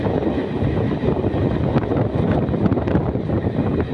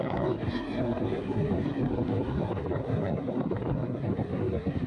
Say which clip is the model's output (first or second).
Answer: second